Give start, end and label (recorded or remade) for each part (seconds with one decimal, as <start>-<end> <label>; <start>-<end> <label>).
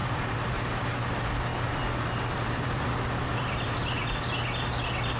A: 0.0-0.8 remade; 0.8-1.5 recorded; 1.5-4.2 remade; 4.2-5.2 recorded